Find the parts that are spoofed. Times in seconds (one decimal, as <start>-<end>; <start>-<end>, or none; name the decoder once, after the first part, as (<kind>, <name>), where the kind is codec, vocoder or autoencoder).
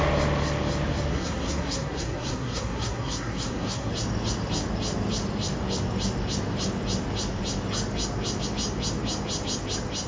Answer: 1.1-3.9 (codec, SNAC)